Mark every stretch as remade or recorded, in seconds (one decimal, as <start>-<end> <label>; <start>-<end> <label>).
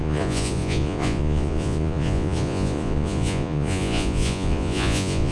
0.0-5.3 remade